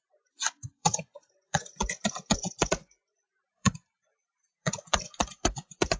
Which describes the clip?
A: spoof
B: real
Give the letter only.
A